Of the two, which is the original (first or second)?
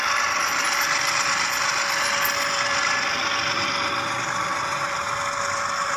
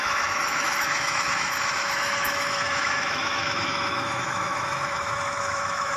first